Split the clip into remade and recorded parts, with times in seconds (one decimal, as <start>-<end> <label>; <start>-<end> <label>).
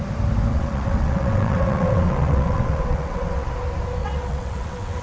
0.0-0.5 recorded; 0.5-3.5 remade; 3.5-4.0 recorded; 4.0-5.0 remade